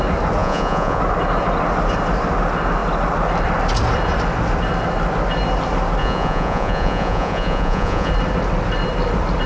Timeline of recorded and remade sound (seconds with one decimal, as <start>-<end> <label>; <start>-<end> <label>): 0.0-0.4 recorded; 0.4-1.0 remade; 1.0-6.0 recorded; 6.0-8.1 remade; 8.1-9.5 recorded